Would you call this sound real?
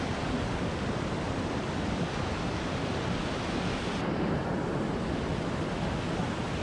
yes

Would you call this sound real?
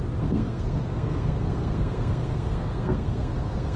no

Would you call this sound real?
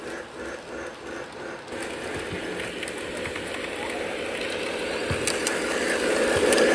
yes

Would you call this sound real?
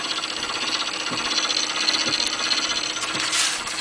yes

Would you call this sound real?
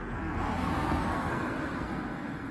no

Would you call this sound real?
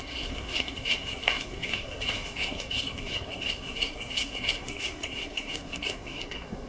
no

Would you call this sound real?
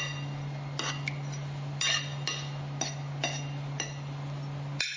yes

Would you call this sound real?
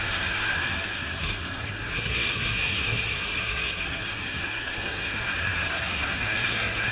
no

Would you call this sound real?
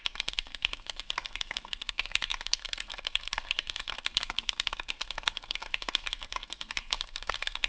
no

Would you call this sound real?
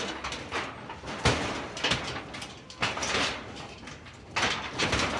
yes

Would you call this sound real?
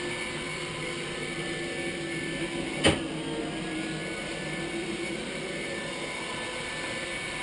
yes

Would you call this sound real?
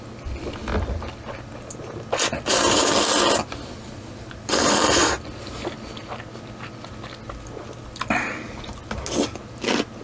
yes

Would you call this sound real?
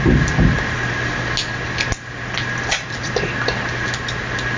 yes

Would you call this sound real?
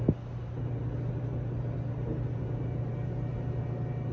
yes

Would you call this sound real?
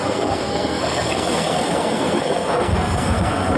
no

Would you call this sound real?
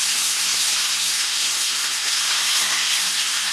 no